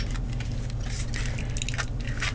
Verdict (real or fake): real